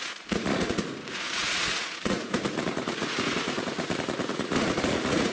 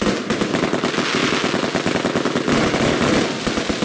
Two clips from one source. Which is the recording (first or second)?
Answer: second